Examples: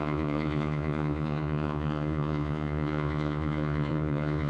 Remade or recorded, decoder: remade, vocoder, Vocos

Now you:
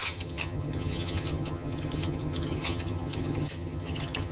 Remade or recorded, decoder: remade, vocoder, HiFi-GAN